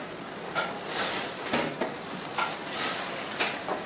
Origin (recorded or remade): recorded